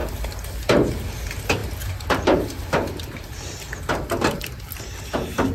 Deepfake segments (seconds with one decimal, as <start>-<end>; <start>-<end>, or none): none